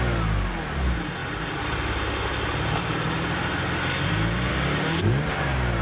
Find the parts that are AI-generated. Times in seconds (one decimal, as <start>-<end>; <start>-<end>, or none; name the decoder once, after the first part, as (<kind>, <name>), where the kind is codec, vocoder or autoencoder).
4.5-5.0 (codec, DAC)